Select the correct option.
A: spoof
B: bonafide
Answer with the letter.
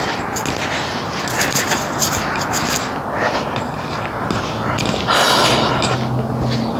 B